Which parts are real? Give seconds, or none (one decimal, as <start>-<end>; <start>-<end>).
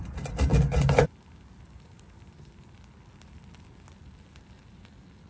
0.0-5.3